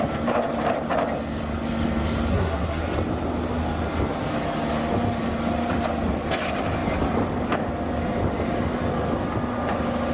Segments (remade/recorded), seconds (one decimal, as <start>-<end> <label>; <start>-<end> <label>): 0.0-2.3 recorded; 2.3-2.8 remade; 2.8-10.1 recorded